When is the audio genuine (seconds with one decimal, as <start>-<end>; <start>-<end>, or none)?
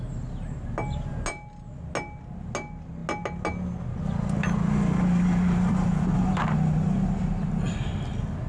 0.0-8.5